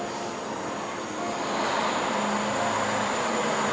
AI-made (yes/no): no